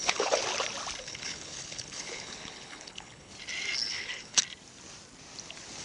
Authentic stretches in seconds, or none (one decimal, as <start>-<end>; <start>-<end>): 0.4-1.0; 3.3-3.9; 4.4-5.8